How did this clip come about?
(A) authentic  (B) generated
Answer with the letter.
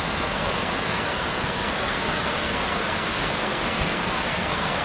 B